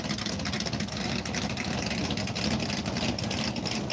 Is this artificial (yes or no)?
no